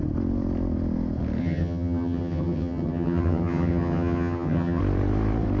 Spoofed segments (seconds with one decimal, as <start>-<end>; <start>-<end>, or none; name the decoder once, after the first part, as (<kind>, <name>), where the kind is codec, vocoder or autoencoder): 1.4-4.8 (vocoder, HiFi-GAN)